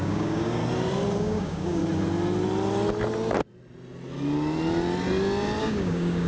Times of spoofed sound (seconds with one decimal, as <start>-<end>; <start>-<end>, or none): 0.0-0.6; 1.2-1.8; 5.6-6.3